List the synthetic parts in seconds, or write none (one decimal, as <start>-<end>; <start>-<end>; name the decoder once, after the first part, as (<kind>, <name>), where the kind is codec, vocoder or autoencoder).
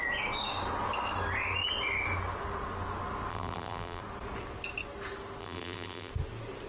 3.3-4.0 (vocoder, BigVGAN v2); 5.4-6.1